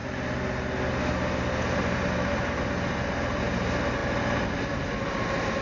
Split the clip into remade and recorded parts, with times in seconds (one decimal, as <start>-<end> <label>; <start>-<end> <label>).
0.0-5.6 recorded